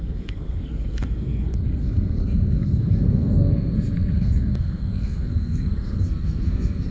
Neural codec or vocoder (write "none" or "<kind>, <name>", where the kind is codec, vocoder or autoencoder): codec, SNAC